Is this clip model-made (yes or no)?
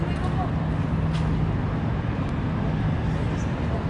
no